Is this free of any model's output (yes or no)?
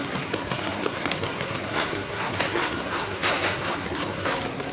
no